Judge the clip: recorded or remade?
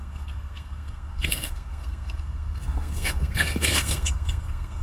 remade